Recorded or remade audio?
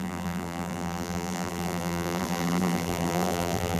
remade